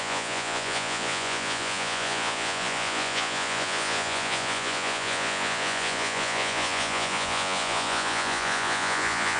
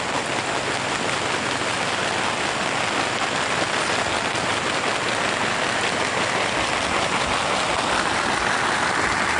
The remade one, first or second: first